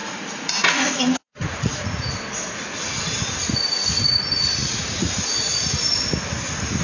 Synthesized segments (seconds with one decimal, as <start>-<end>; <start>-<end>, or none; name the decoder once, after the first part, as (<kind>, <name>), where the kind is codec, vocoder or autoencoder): 0.0-2.0 (vocoder, Vocos); 4.6-5.2

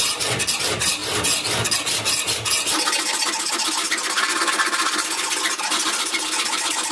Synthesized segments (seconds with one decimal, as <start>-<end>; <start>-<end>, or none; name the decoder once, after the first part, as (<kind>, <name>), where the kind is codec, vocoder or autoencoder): none

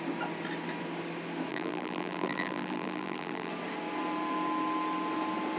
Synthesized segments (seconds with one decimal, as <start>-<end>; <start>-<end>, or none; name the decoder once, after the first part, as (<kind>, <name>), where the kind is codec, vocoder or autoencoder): 1.5-3.5 (vocoder, BigVGAN v2)